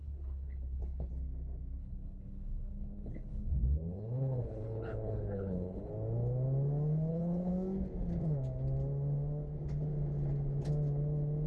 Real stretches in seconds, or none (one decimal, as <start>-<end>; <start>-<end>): 1.1-1.8; 5.9-7.1; 7.5-11.5